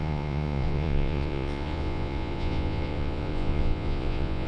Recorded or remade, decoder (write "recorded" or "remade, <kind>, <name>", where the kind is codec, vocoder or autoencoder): remade, vocoder, Vocos